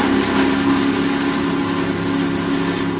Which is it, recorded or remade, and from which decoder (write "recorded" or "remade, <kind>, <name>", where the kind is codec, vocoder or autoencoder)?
recorded